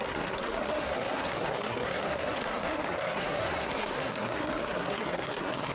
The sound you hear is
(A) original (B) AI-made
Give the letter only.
B